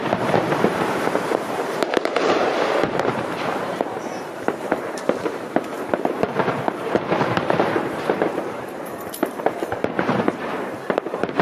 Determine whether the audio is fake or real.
fake